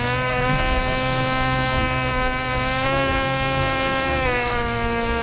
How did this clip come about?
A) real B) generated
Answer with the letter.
B